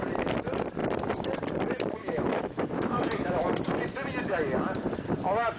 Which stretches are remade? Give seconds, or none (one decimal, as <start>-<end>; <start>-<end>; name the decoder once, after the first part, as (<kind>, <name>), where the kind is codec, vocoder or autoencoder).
2.0-3.4 (autoencoder, DAC-VAE)